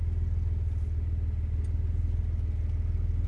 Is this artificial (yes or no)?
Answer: no